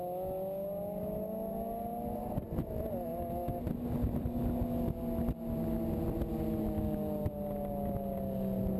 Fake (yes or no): no